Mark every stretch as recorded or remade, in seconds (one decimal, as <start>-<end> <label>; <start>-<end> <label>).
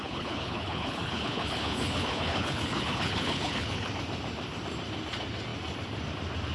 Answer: 0.0-3.9 remade; 3.9-6.5 recorded